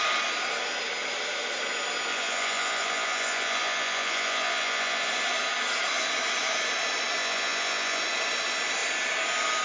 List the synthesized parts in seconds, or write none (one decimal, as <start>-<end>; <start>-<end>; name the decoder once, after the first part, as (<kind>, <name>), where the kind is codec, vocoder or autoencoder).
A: 2.1-5.1 (vocoder, Vocos); 7.2-8.0